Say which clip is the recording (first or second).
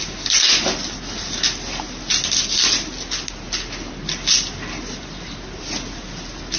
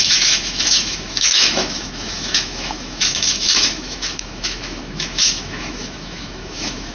first